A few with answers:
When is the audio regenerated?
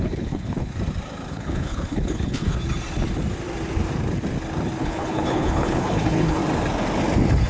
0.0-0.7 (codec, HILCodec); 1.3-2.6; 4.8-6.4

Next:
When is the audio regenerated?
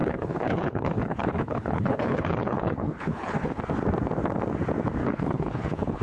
0.0-3.6 (codec, HILCodec); 5.0-6.0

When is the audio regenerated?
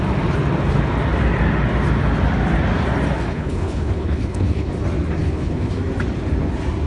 3.3-4.7 (codec, HILCodec); 5.2-5.7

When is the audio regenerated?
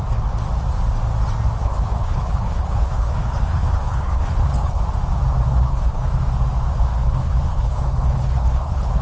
1.6-4.8 (codec, HILCodec); 5.5-6.1; 6.9-9.0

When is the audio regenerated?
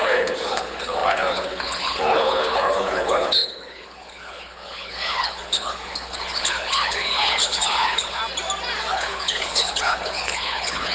0.0-8.2 (codec, HILCodec); 8.9-10.9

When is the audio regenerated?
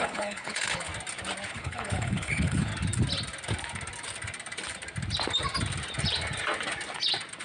0.0-0.9 (codec, HILCodec); 1.5-2.7